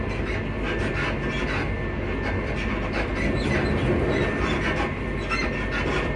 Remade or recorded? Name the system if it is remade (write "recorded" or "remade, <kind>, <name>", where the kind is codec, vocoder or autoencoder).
recorded